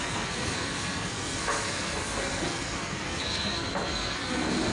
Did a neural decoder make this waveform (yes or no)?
yes